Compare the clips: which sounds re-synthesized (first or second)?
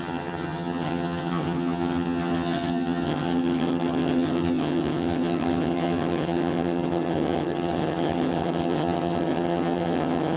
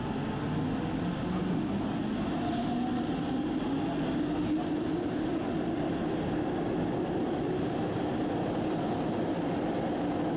first